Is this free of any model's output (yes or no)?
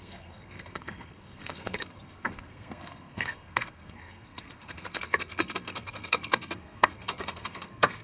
no